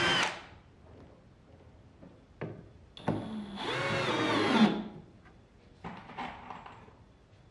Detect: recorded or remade recorded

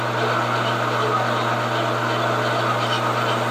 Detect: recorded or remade recorded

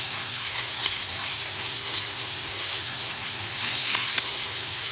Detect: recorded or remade remade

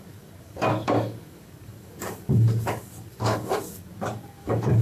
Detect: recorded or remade remade